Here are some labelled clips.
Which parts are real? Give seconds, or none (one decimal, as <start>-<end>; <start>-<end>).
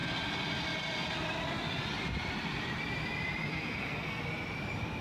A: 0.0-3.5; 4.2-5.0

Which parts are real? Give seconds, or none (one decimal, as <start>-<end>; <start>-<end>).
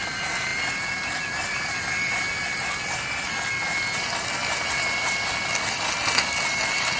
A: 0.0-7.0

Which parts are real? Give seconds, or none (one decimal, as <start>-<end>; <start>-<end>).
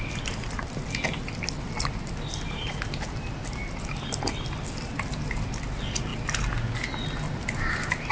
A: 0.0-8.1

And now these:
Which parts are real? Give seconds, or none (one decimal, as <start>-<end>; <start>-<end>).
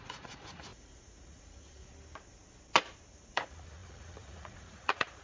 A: 1.9-3.1